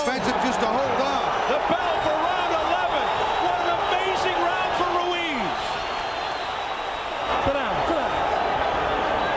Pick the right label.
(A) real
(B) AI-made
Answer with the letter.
A